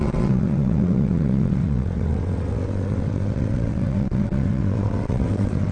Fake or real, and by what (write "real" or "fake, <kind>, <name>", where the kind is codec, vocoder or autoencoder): fake, vocoder, WaveNeXt